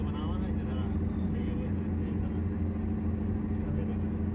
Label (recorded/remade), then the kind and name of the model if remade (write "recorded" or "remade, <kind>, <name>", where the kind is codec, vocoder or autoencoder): recorded